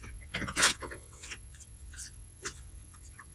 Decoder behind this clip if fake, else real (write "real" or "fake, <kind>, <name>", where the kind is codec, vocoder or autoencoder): fake, vocoder, WaveNeXt